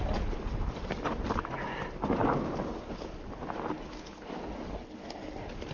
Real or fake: real